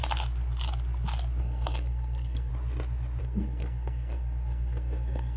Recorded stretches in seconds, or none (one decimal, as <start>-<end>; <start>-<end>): 0.0-1.4; 2.5-3.2